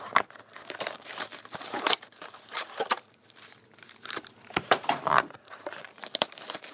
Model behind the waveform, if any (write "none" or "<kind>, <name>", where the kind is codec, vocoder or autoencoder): vocoder, BigVGAN v2